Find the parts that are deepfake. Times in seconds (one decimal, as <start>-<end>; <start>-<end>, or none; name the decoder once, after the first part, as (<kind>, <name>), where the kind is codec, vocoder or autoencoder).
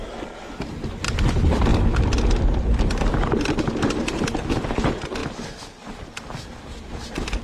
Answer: none